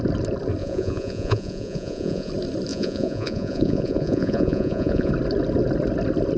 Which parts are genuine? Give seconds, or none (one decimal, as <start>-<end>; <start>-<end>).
0.0-0.6; 2.3-2.7; 5.1-6.4